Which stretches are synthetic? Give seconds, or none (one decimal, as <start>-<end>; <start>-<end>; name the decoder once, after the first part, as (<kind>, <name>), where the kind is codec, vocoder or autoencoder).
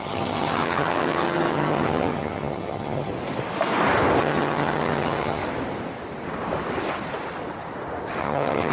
0.0-3.1 (vocoder, HiFi-GAN); 4.2-5.4; 8.2-8.7